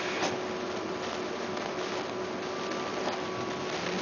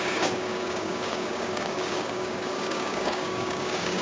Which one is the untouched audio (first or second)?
first